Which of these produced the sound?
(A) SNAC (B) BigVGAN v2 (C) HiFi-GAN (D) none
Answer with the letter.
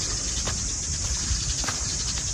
B